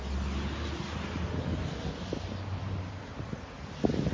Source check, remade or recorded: recorded